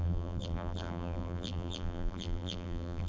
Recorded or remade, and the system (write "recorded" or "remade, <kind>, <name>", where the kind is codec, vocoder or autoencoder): remade, vocoder, BigVGAN v2